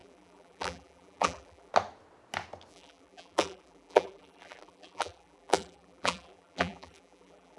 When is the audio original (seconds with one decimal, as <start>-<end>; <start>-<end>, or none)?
1.7-2.7